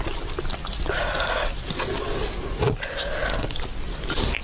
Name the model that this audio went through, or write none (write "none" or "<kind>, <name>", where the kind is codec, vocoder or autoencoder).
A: none